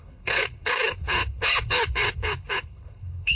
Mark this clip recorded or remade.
remade